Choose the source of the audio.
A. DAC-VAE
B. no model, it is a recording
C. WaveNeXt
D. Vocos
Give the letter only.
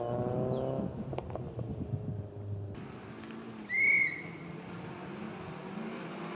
B